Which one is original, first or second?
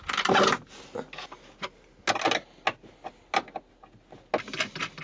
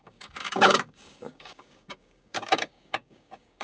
first